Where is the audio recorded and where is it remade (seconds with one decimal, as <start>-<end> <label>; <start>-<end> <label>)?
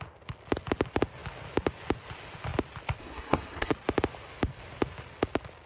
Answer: 0.0-3.0 recorded; 3.0-3.7 remade; 3.7-5.7 recorded